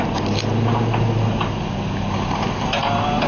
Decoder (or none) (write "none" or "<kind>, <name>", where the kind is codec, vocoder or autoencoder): none